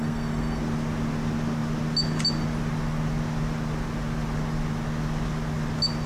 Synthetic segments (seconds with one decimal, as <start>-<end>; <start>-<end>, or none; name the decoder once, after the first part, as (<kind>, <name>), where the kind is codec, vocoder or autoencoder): 0.0-0.6 (codec, SNAC)